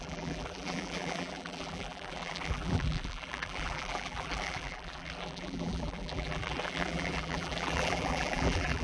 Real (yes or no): no